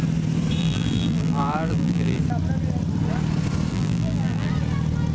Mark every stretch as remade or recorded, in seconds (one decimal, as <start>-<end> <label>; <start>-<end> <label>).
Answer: 0.0-0.6 recorded; 0.6-2.2 remade; 2.2-3.7 recorded; 3.7-4.5 remade; 4.5-5.1 recorded